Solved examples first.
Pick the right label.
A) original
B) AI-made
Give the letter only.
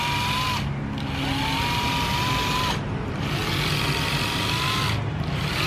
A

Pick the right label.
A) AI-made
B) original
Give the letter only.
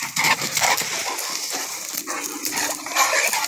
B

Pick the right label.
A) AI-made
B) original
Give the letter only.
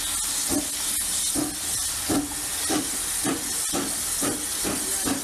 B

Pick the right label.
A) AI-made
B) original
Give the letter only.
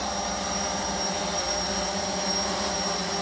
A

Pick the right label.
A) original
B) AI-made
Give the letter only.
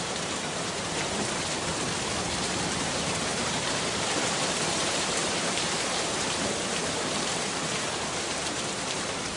B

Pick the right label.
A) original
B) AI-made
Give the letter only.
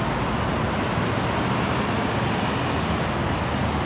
A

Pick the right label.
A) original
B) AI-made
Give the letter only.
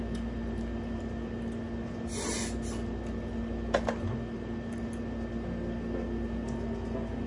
A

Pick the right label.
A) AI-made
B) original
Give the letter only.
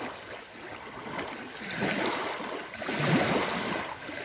B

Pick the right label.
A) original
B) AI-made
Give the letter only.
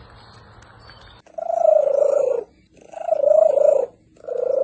A